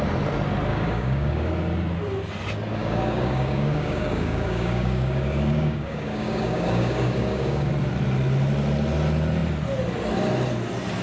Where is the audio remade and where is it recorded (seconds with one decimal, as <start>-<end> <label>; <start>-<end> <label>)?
0.0-0.7 recorded; 0.7-1.5 remade; 1.5-2.8 recorded; 2.8-7.7 remade; 7.7-11.0 recorded